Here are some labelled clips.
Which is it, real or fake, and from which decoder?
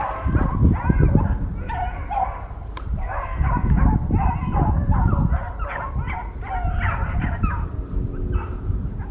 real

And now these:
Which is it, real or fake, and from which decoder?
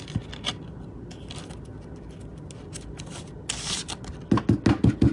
real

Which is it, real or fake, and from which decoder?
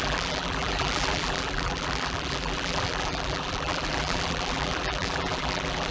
fake, vocoder, BigVGAN v2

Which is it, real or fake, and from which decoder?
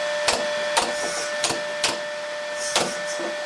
real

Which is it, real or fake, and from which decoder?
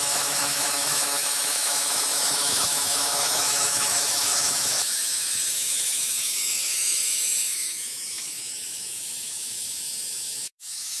fake, autoencoder, DAC-VAE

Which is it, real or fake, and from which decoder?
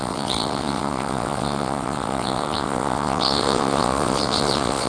fake, vocoder, WaveNeXt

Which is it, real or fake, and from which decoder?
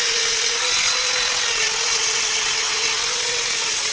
fake, vocoder, WaveNeXt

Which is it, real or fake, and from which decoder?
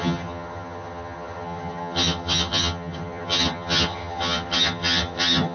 fake, vocoder, HiFi-GAN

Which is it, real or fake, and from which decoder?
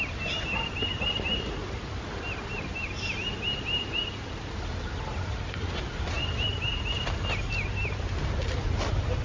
real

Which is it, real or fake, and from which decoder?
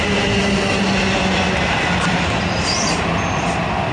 real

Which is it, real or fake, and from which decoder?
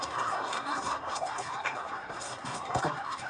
fake, codec, SNAC